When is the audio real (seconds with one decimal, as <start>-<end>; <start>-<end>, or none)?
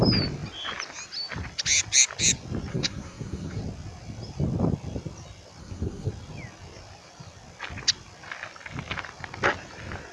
0.0-2.7; 3.6-5.6; 6.1-10.1